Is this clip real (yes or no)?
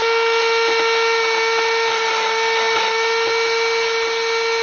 yes